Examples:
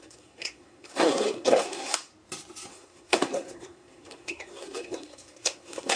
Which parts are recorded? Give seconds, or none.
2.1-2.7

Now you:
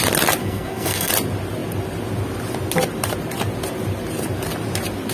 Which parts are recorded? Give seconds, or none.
0.0-0.4; 1.1-5.1